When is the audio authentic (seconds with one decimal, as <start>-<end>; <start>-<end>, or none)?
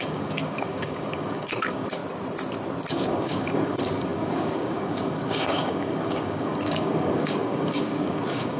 2.0-2.9